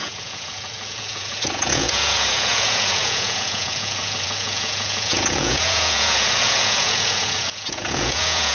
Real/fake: fake